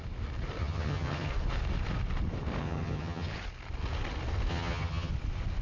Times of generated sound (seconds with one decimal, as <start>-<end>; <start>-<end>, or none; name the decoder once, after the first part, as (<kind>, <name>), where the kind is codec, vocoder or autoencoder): 0.6-1.3 (vocoder, HiFi-GAN); 2.6-3.3; 4.5-5.1